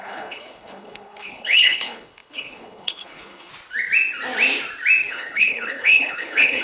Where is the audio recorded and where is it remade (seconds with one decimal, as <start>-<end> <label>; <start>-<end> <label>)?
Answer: 0.0-3.5 remade; 3.5-5.1 recorded; 5.1-6.6 remade